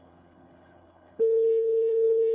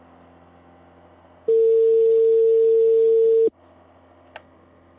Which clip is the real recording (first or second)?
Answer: second